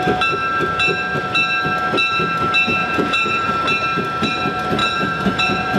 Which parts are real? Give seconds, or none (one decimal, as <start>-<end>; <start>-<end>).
0.0-2.8; 3.5-4.8